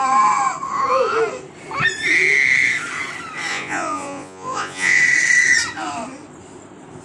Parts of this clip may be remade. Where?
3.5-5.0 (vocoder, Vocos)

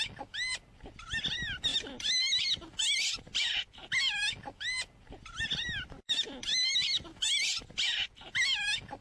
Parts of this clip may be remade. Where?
none

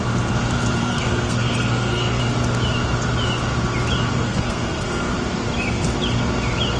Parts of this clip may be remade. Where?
0.8-2.2 (codec, SNAC); 4.2-5.1

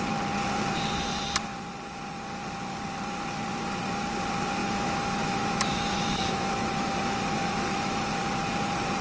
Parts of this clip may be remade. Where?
4.6-8.1 (autoencoder, DAC-VAE)

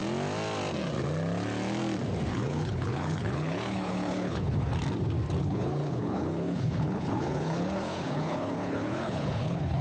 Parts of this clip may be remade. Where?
2.3-4.7 (codec, HILCodec); 5.4-9.8